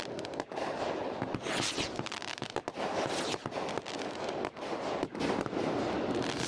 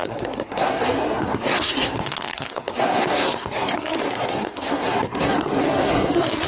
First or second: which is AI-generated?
second